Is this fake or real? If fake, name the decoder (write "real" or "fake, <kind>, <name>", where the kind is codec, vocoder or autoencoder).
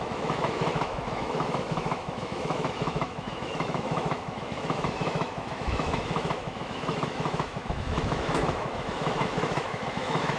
fake, autoencoder, DAC-VAE